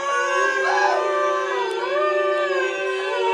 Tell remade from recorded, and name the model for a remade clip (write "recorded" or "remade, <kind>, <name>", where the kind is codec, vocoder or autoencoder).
recorded